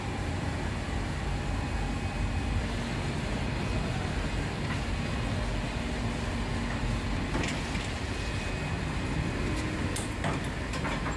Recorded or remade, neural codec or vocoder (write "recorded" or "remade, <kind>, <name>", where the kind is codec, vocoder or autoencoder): recorded